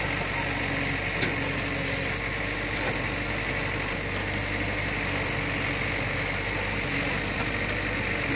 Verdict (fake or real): real